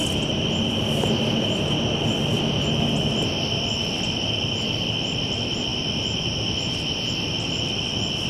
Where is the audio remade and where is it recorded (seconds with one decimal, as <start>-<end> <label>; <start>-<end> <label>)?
0.0-5.7 recorded; 5.7-7.1 remade; 7.1-8.3 recorded